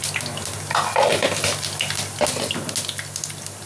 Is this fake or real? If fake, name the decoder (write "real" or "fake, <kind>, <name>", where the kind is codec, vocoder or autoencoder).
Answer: real